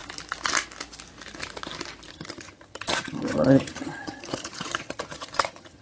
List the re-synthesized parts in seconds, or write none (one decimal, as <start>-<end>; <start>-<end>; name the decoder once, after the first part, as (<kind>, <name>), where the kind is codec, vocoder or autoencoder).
2.1-5.8 (vocoder, HiFi-GAN)